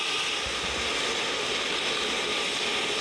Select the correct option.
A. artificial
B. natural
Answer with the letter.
B